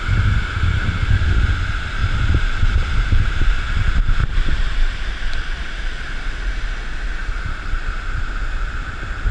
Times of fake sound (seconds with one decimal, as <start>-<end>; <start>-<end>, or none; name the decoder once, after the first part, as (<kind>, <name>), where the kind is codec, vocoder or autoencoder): 2.0-3.0 (vocoder, BigVGAN v2); 4.2-5.1; 7.2-7.8